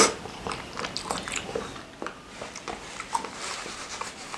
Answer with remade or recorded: recorded